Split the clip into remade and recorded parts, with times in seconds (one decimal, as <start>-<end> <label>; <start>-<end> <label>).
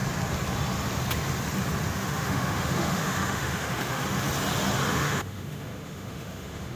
0.0-1.9 recorded; 1.9-4.0 remade; 4.0-4.9 recorded; 4.9-6.8 remade